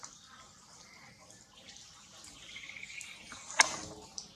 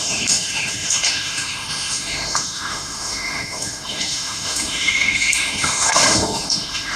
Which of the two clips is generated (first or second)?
second